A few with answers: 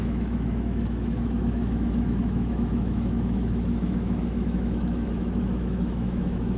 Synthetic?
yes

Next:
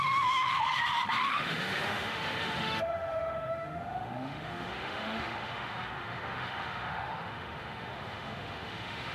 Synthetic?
yes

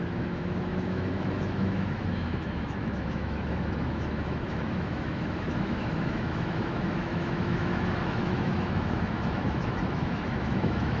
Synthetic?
yes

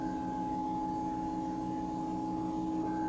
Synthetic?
no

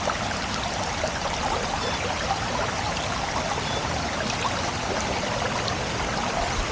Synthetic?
no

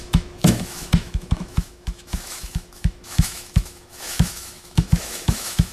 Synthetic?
yes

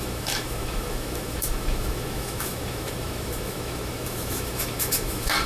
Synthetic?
yes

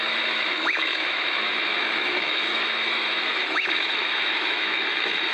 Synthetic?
yes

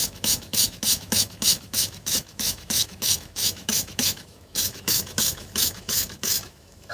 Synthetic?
yes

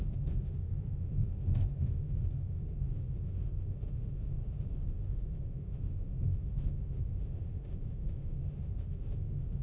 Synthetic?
yes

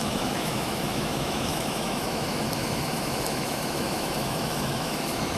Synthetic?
yes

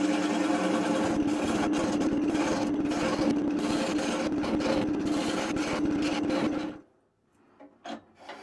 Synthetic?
no